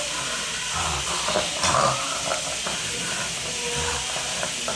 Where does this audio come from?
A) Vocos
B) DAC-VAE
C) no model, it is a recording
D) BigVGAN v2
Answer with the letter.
C